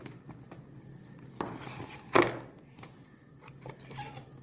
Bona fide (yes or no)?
yes